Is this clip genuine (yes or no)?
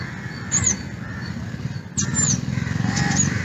yes